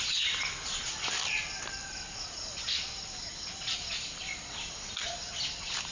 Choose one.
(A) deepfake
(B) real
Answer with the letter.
B